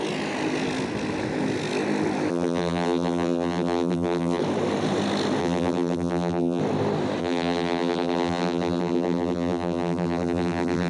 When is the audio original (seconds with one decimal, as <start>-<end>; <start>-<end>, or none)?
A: 0.0-2.3; 4.4-5.4; 6.6-7.2